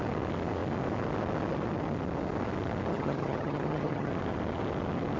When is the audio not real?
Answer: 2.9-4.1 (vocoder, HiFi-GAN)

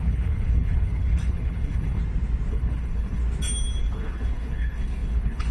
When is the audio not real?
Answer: 0.0-2.0 (codec, HILCodec); 2.5-3.2; 3.8-5.5

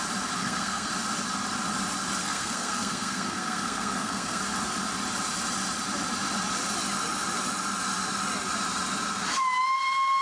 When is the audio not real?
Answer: 0.4-0.9 (codec, SNAC); 2.2-4.4